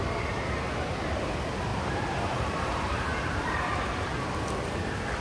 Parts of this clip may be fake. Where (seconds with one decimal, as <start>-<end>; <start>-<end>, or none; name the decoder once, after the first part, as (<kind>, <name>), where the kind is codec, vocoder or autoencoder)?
0.0-0.7 (vocoder, BigVGAN v2); 1.7-3.2